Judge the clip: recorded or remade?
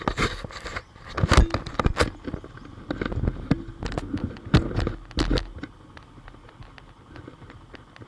recorded